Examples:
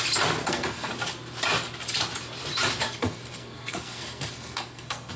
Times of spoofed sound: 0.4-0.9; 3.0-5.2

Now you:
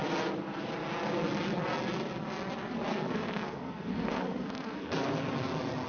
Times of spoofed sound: 2.9-5.1

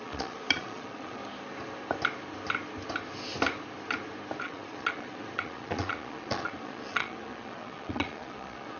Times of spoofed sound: 0.0-1.2; 4.4-8.8

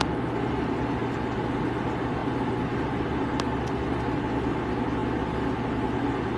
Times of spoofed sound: none

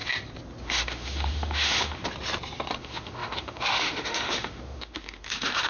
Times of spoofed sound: 0.6-2.0; 2.8-5.7

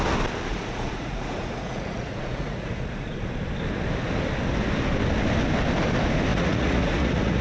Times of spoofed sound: 0.5-3.2; 6.3-7.4

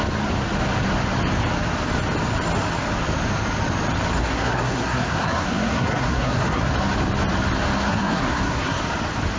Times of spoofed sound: 4.2-6.7; 7.8-8.8